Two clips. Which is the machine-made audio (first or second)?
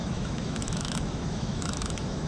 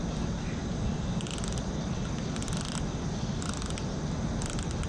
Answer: first